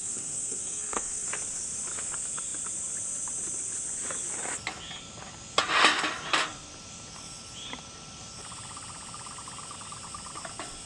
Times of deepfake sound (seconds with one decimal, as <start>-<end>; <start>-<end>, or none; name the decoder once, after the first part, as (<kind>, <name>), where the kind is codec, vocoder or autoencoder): 0.0-1.3 (codec, SNAC)